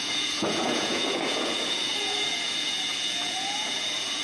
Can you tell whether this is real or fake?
fake